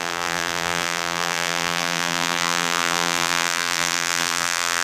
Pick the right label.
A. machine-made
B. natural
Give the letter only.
A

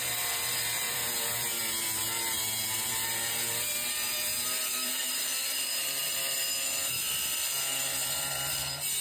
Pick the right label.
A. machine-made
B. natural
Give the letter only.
A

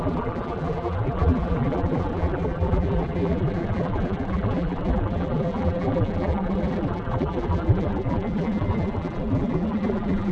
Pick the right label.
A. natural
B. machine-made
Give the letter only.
B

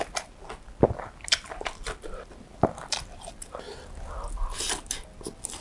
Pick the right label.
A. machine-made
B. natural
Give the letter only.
B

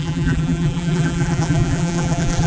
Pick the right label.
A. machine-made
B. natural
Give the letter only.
A